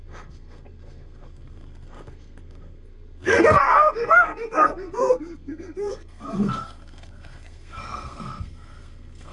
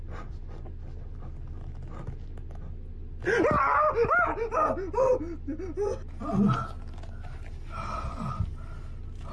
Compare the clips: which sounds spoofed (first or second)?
first